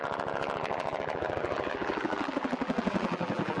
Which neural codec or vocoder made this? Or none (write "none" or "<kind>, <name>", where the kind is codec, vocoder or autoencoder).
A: vocoder, BigVGAN v2